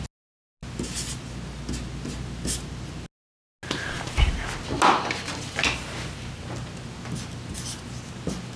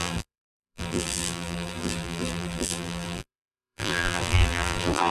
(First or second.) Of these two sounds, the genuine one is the first